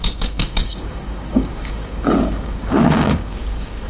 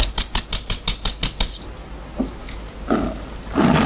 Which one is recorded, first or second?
second